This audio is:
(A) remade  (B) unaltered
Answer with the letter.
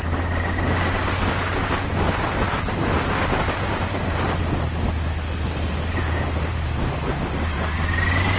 B